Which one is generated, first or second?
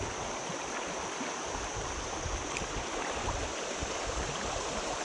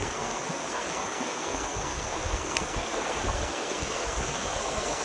second